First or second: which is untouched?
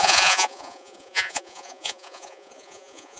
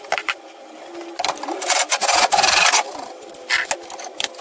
second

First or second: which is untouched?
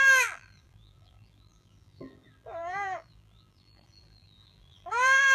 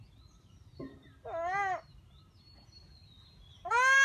second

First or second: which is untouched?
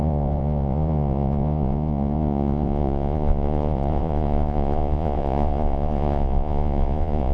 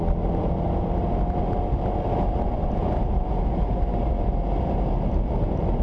second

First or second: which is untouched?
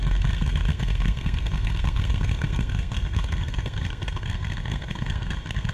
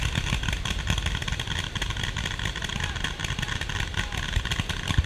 second